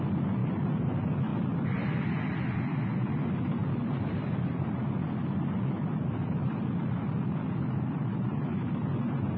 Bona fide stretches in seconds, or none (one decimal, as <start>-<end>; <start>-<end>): 0.0-0.4; 0.9-1.3; 2.6-3.6; 7.0-9.4